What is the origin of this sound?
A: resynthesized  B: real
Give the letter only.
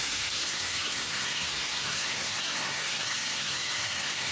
A